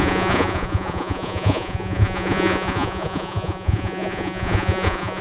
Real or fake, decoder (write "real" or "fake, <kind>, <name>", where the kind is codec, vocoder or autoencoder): fake, vocoder, Vocos